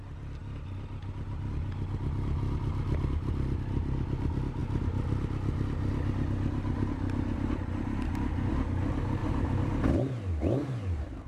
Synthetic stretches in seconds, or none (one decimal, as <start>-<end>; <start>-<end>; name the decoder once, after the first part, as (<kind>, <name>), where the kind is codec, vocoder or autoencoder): 9.2-9.8 (vocoder, BigVGAN v2)